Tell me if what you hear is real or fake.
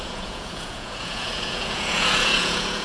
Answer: fake